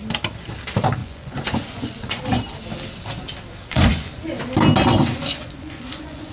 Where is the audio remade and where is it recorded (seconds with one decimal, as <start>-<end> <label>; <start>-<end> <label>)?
0.0-1.0 recorded; 1.0-2.2 remade; 2.2-3.6 recorded; 3.6-4.1 remade; 4.1-5.0 recorded; 5.0-6.3 remade